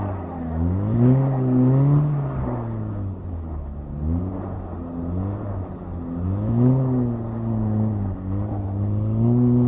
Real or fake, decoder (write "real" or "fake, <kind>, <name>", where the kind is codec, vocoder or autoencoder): real